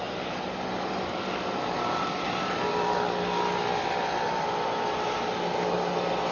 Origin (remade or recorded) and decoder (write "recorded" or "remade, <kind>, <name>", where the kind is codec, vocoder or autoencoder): recorded